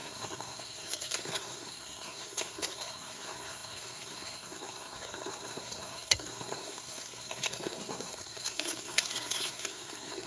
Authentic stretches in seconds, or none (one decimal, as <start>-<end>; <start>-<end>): none